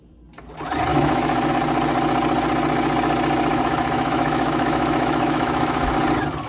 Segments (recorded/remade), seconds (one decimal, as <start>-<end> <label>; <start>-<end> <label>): 0.0-0.9 recorded; 0.9-1.5 remade; 1.5-3.5 recorded; 3.5-5.9 remade; 5.9-6.5 recorded